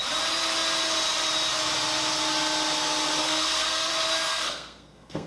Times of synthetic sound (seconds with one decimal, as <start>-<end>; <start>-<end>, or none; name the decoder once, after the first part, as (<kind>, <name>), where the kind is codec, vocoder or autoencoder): 3.2-3.9 (codec, SNAC); 4.3-5.3